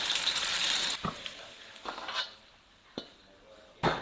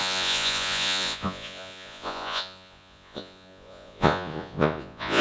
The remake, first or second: second